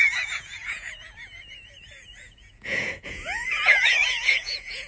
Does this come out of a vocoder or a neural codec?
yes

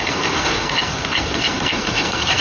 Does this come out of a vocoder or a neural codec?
yes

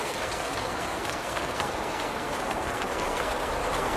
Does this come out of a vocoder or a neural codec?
yes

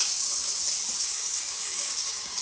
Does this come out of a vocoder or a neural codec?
yes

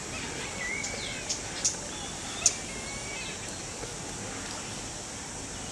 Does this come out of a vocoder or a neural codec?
no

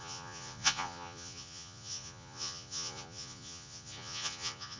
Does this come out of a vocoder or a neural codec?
yes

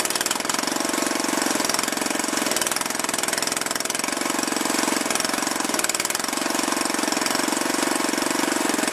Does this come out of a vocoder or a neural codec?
no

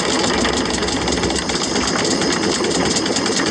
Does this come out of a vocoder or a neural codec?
no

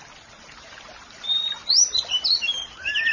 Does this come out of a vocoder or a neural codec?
no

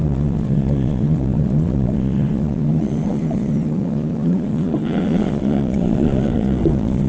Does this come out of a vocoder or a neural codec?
yes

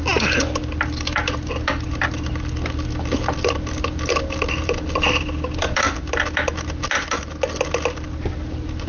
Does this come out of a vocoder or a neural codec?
no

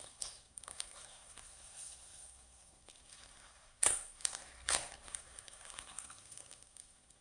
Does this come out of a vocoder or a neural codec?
yes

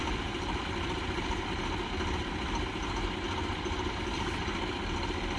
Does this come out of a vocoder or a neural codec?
no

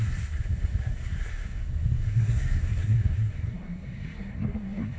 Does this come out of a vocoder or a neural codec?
yes